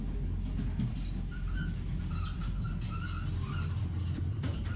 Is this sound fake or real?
real